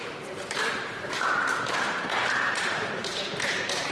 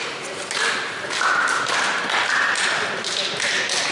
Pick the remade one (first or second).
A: first